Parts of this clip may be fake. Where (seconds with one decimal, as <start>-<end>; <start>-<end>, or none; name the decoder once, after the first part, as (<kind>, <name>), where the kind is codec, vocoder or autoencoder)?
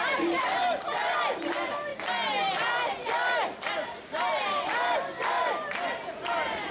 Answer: none